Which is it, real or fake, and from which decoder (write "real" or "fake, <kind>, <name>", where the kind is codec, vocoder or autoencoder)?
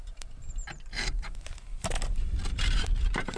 fake, vocoder, BigVGAN v2